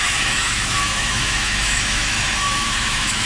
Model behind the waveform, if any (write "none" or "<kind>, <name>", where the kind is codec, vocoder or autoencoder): autoencoder, DAC-VAE